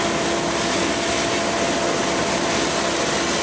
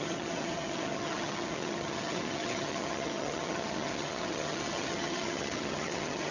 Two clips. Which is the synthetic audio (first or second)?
second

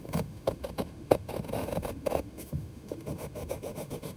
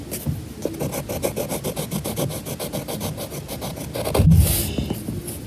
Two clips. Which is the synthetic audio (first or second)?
first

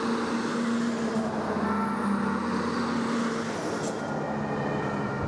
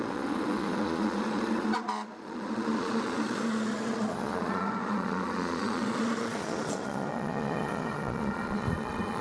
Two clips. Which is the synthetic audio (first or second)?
second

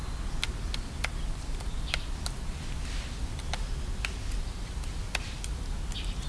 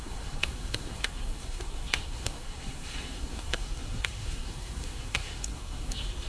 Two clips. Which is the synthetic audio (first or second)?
second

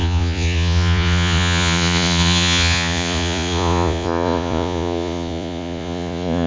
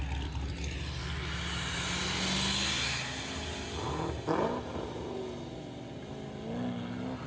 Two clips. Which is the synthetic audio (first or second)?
first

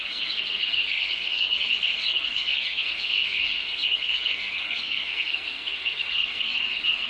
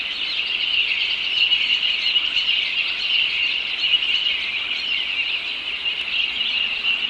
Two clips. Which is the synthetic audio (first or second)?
first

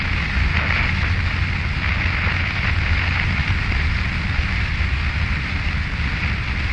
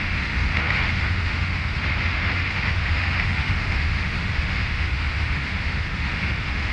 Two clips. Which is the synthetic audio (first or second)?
second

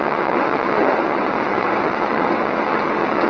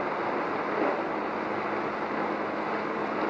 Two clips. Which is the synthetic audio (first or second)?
first